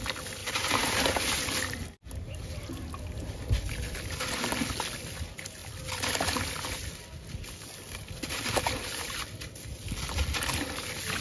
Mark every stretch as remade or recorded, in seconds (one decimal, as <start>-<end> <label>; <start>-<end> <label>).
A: 0.0-0.4 recorded; 0.4-1.2 remade; 1.2-11.2 recorded